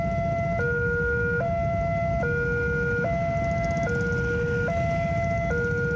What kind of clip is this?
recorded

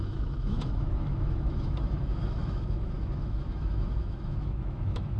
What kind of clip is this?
remade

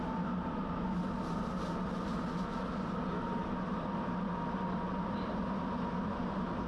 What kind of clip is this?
recorded